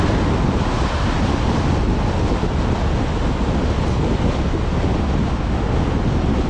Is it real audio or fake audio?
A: real